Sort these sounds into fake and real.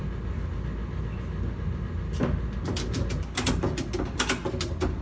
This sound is real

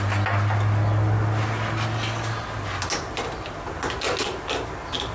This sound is real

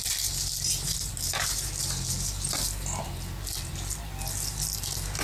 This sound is real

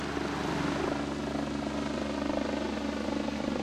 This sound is real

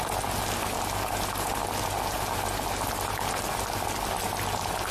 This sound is real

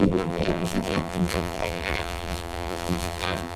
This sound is fake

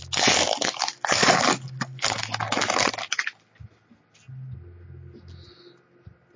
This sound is real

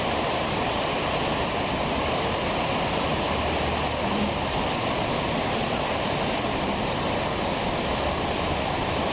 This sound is fake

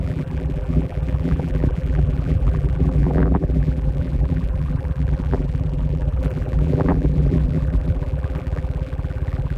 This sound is fake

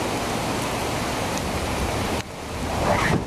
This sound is fake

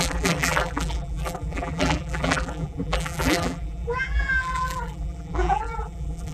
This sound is fake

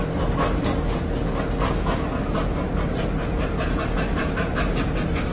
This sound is real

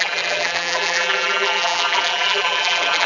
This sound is fake